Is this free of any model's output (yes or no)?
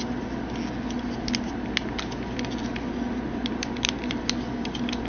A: yes